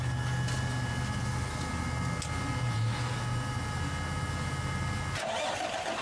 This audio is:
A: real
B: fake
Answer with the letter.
A